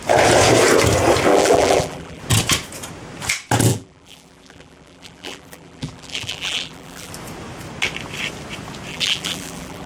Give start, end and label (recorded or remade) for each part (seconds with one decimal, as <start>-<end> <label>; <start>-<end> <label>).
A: 0.0-1.3 recorded; 1.3-2.2 remade; 2.2-3.7 recorded; 3.7-7.1 remade; 7.1-8.9 recorded; 8.9-9.9 remade